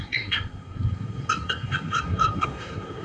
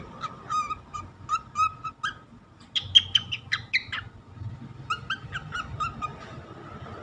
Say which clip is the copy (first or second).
first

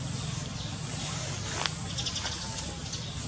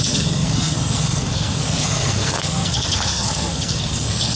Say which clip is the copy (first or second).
second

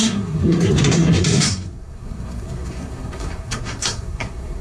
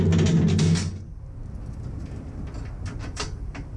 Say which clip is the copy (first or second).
first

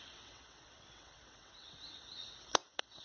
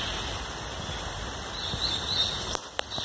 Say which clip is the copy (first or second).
first